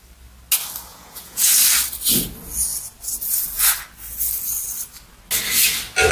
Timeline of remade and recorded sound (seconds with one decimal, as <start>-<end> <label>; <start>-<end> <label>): 0.0-0.9 recorded; 0.9-1.5 remade; 1.5-6.1 recorded